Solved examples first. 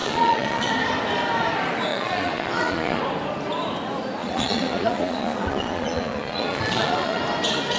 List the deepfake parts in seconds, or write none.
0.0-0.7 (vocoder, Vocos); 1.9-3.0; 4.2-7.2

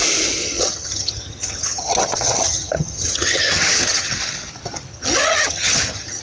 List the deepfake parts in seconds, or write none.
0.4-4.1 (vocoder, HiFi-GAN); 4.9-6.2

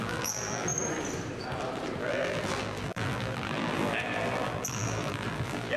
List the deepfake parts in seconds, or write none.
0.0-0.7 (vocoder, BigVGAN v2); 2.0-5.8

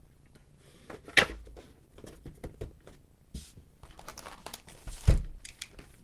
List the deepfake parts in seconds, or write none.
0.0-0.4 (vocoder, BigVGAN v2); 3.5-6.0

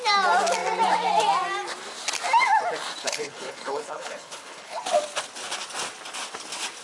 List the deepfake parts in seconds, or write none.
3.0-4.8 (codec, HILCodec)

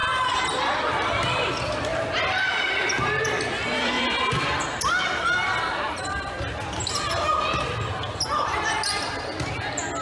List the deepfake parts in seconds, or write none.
1.9-6.0 (vocoder, BigVGAN v2)

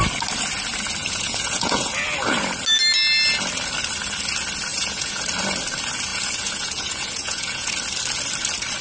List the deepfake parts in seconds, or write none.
1.0-1.9 (vocoder, Vocos); 4.7-5.2; 6.1-7.7

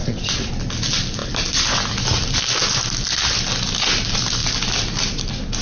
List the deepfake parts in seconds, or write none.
0.0-0.5 (vocoder, Vocos)